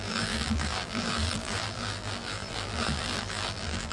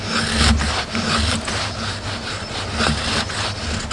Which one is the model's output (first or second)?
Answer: first